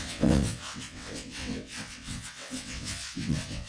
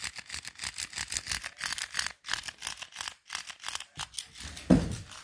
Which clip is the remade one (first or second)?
first